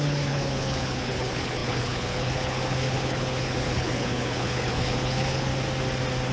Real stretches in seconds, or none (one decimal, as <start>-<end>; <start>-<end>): 5.5-6.3